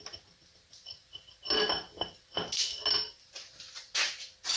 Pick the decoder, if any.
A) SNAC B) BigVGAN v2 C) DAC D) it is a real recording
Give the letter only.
D